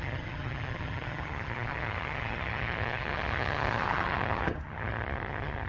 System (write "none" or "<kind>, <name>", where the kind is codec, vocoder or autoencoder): vocoder, HiFi-GAN